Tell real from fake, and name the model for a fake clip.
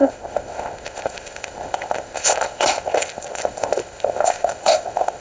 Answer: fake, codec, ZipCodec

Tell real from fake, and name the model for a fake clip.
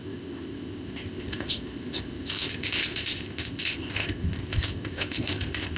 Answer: fake, codec, ZipCodec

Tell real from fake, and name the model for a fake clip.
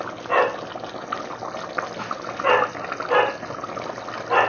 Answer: real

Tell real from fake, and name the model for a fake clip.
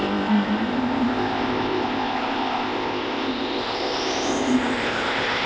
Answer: fake, codec, ZipCodec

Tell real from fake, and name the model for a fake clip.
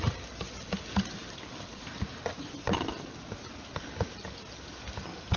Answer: real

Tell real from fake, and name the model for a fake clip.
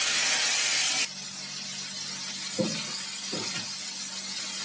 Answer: real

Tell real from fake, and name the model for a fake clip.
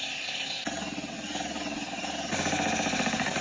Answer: real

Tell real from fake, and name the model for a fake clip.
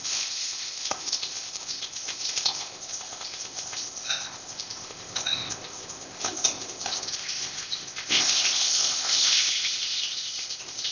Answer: fake, codec, ZipCodec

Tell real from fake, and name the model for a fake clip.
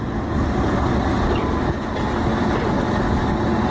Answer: real